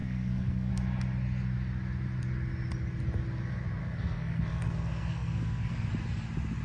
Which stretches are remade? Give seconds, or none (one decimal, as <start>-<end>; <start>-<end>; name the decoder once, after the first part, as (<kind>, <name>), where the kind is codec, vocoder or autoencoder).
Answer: 0.0-0.7 (codec, SNAC); 3.8-5.9